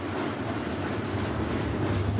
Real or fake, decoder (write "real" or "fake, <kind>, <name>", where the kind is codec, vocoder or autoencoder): real